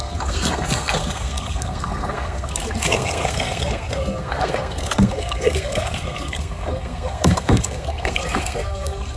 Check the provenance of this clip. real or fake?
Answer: fake